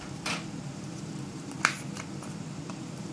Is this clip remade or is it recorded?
remade